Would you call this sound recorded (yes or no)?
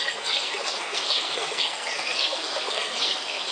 no